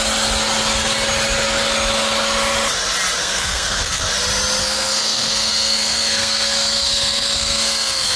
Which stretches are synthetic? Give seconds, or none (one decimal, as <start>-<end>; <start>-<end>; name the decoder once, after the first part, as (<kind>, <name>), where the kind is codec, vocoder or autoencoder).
3.2-4.1 (codec, SNAC); 4.6-8.2